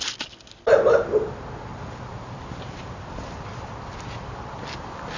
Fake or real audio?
real